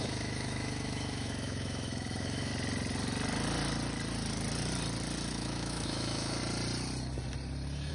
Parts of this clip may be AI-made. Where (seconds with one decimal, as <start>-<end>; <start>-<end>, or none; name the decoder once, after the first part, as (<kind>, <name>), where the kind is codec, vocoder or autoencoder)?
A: 0.0-2.5 (autoencoder, DAC-VAE); 5.3-6.4